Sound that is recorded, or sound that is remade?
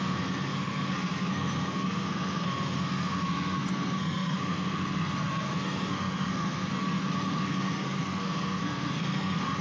remade